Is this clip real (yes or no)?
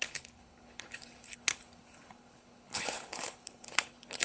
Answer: no